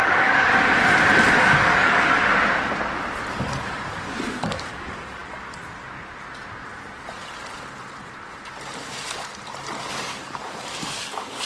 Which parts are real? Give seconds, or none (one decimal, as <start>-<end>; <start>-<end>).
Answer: 0.5-1.3; 2.2-3.3; 5.2-9.8